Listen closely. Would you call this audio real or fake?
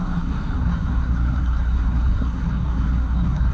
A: fake